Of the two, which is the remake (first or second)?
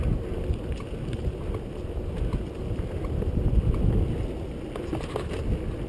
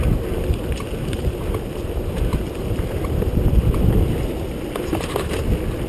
second